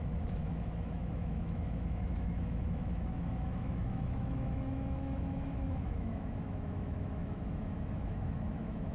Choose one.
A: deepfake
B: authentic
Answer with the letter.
A